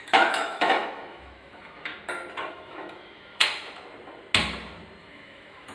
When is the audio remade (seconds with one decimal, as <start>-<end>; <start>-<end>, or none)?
0.0-1.9; 2.5-3.4; 5.0-5.7